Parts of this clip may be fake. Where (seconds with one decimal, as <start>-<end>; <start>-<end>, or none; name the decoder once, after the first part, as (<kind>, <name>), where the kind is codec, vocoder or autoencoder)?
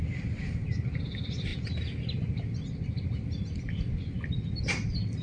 none